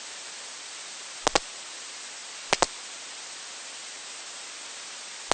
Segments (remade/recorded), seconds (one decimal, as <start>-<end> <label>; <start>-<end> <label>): 0.0-5.3 recorded